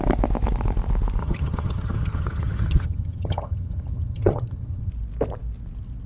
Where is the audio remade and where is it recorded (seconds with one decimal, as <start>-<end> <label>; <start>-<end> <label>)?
0.0-1.2 recorded; 1.2-4.9 remade; 4.9-6.1 recorded